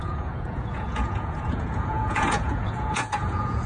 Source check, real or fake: fake